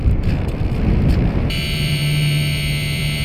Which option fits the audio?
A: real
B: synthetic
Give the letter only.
B